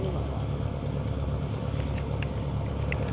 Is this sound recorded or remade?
recorded